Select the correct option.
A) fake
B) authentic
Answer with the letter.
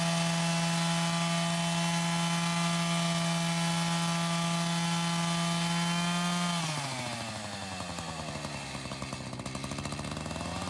B